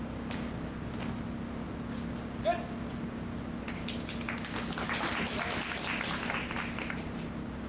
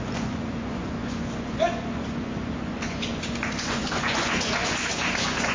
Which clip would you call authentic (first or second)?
first